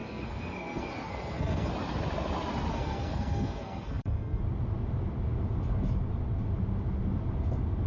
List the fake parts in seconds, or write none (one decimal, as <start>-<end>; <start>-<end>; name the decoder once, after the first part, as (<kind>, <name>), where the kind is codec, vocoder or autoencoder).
0.0-1.7 (codec, SNAC); 2.7-4.4

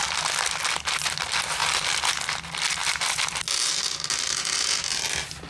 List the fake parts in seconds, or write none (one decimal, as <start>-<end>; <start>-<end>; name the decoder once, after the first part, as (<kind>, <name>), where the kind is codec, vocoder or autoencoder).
1.6-2.1 (vocoder, BigVGAN v2); 2.8-3.4

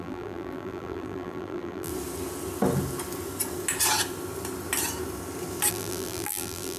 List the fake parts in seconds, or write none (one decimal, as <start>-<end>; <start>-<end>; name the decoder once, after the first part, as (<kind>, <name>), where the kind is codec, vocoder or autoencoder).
0.0-1.9 (vocoder, BigVGAN v2); 5.7-6.8

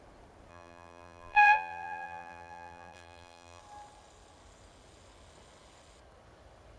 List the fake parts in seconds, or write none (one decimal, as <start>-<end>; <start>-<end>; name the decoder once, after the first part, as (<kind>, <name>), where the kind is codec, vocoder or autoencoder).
0.5-3.6 (vocoder, BigVGAN v2)

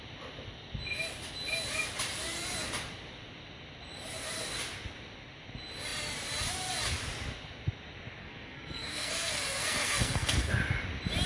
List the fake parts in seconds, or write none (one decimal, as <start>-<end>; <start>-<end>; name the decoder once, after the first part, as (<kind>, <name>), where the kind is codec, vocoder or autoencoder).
8.2-10.5 (codec, SNAC)

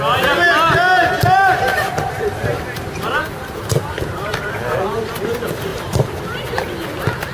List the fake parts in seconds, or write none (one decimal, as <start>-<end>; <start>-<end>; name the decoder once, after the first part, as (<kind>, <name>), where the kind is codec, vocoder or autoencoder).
1.7-4.3 (vocoder, BigVGAN v2); 5.7-6.2

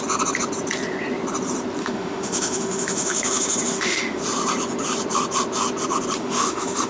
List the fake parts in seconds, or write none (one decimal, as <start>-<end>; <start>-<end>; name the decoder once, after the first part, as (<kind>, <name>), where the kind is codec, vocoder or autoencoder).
1.8-4.2 (autoencoder, DAC-VAE); 6.2-6.9

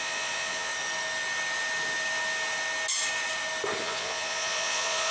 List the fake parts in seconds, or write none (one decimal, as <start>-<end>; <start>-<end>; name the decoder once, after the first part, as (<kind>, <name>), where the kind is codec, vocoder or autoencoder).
0.0-0.7 (vocoder, Vocos); 3.8-5.1